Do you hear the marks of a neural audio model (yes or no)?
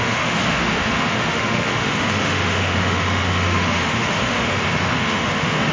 yes